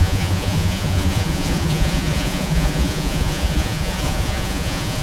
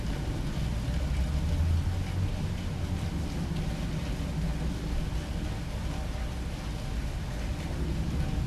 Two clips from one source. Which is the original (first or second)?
second